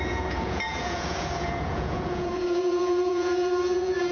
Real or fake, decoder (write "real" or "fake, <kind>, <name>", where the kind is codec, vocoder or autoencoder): fake, vocoder, Vocos